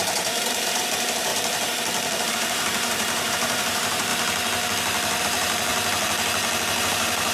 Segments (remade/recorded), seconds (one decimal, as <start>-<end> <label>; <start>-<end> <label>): 0.0-1.3 remade; 1.3-2.3 recorded; 2.3-4.1 remade; 4.1-5.2 recorded; 5.2-5.7 remade; 5.7-6.8 recorded; 6.8-7.3 remade